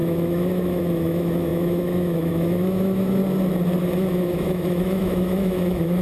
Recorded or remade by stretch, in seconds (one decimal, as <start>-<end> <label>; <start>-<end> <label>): 0.0-3.2 remade; 3.2-3.8 recorded; 3.8-6.0 remade